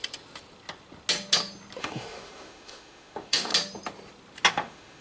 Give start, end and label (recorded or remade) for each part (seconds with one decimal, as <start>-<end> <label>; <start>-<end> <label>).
0.0-1.8 recorded; 1.8-3.5 remade; 3.5-4.5 recorded; 4.5-5.0 remade